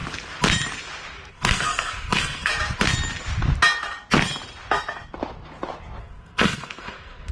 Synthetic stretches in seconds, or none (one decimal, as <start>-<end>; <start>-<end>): 1.3-2.5; 6.0-7.3